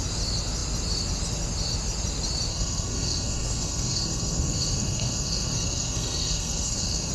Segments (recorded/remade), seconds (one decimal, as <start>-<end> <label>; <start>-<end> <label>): 0.0-2.5 recorded; 2.5-7.1 remade